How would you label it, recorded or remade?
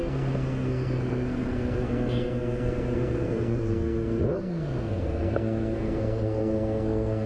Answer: remade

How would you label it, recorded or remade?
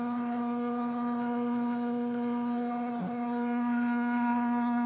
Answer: remade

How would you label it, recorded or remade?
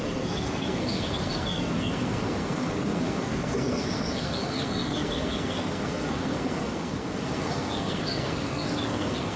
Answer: remade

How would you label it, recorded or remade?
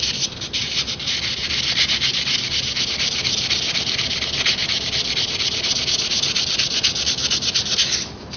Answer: recorded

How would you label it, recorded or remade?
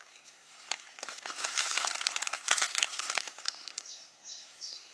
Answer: remade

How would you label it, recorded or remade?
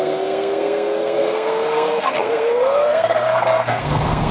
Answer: remade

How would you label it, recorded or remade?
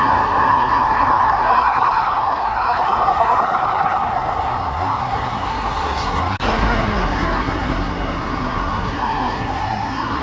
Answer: remade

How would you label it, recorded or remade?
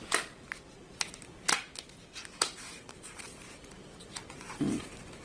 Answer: recorded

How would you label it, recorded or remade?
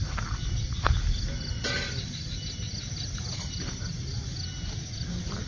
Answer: recorded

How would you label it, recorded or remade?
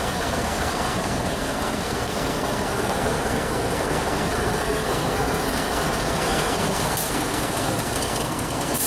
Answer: remade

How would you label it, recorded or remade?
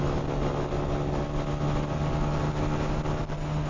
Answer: recorded